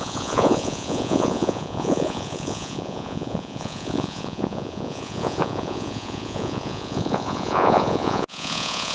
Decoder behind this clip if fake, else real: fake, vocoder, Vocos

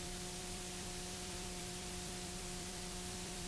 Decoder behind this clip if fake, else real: fake, vocoder, BigVGAN v2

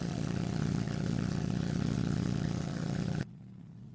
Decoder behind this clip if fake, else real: fake, vocoder, Vocos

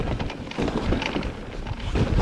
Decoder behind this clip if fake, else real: real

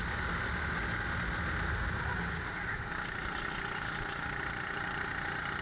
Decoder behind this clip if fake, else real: real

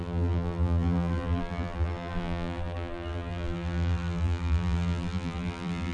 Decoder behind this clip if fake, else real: fake, vocoder, BigVGAN v2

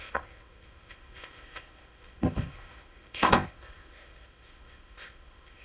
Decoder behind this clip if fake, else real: fake, codec, ZipCodec